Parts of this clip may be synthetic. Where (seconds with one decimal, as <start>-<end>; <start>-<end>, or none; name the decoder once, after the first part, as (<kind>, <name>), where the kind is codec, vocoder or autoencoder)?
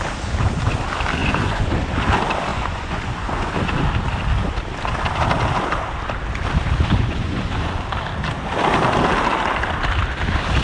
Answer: 1.2-1.8 (vocoder, Vocos); 2.5-3.5; 6.9-7.8